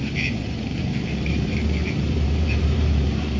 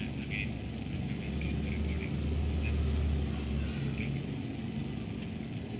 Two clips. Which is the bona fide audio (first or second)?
second